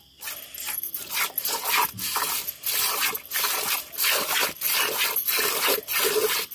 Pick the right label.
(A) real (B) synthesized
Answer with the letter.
A